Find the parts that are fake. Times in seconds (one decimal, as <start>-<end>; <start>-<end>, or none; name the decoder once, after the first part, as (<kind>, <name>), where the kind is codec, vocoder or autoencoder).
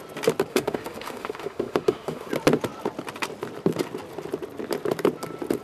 0.5-2.3 (autoencoder, DAC-VAE)